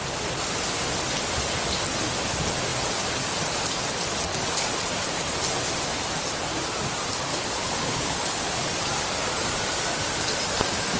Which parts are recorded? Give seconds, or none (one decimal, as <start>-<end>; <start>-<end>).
0.0-7.3; 8.7-11.0